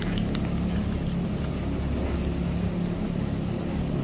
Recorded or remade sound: recorded